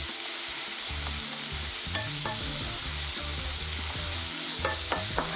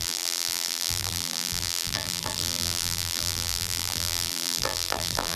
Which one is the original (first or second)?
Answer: first